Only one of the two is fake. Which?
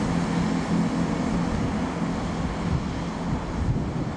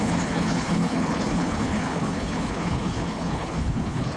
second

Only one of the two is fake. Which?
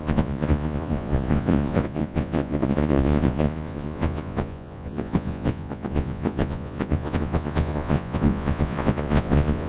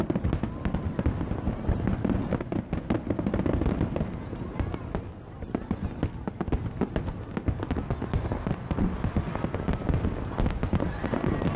first